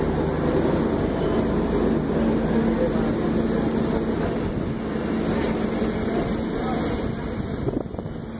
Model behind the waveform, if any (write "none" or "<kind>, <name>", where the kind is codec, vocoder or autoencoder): none